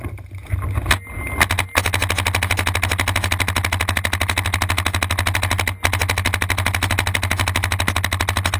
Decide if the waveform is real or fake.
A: real